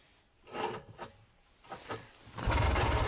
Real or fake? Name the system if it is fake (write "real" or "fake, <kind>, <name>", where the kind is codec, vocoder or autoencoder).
real